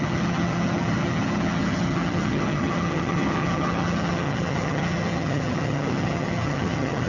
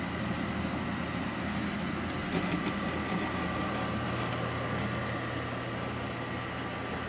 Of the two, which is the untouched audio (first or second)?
second